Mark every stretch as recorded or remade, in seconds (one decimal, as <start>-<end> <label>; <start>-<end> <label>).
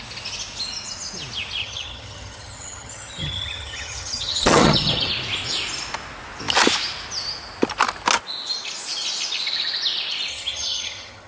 0.0-1.6 recorded; 1.6-5.1 remade; 5.1-10.3 recorded; 10.3-11.3 remade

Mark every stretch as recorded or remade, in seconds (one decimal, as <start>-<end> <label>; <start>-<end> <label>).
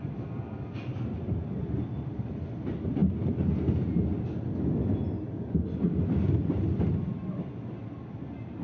0.0-8.6 recorded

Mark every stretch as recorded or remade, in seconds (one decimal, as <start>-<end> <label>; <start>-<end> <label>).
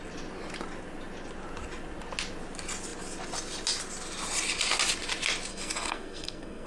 0.0-5.5 recorded; 5.5-6.7 remade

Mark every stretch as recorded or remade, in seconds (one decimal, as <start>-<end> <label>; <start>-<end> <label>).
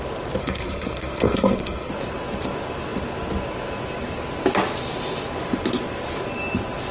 0.0-0.4 recorded; 0.4-1.9 remade; 1.9-6.9 recorded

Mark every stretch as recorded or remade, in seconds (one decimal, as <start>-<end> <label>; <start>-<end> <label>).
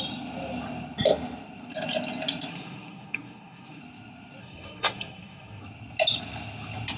0.0-2.5 recorded; 2.5-3.8 remade; 3.8-4.4 recorded; 4.4-5.6 remade; 5.6-7.0 recorded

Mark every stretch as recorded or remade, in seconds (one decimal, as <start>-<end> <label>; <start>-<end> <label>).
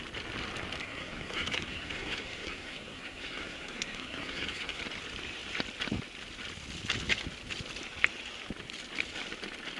0.0-0.8 recorded; 0.8-4.8 remade; 4.8-9.8 recorded